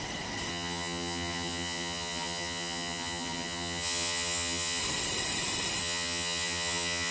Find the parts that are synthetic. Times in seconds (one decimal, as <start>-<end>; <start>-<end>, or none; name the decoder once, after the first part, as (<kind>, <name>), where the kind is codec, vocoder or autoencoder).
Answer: 0.5-4.8 (vocoder, HiFi-GAN); 5.8-7.1